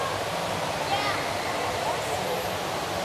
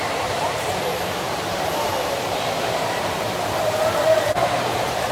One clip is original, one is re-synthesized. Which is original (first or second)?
first